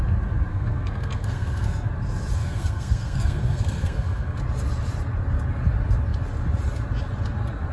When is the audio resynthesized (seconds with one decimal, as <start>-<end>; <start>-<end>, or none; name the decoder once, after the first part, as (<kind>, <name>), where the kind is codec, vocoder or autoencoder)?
0.5-1.9 (codec, SNAC); 2.4-4.4